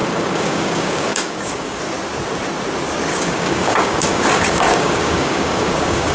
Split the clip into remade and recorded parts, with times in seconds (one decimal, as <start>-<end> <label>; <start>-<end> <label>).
0.0-1.8 remade; 1.8-3.1 recorded; 3.1-6.1 remade